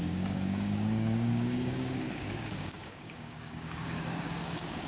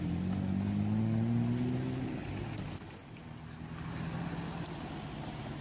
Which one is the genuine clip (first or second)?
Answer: second